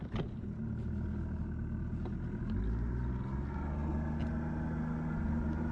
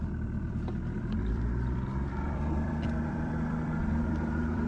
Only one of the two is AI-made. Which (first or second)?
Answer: second